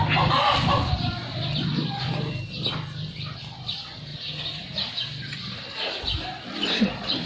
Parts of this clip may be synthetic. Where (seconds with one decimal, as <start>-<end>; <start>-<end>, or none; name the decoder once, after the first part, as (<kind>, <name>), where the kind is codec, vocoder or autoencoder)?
none